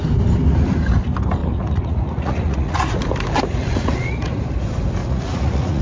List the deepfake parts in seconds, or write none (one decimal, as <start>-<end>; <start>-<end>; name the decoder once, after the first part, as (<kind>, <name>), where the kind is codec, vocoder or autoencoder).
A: 1.4-2.9 (vocoder, Vocos); 3.6-4.4; 5.0-5.8